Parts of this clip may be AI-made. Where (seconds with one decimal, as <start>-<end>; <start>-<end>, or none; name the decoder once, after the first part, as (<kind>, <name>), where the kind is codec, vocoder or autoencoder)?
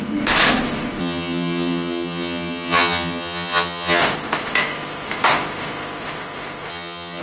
1.0-4.0 (vocoder, HiFi-GAN); 6.7-7.2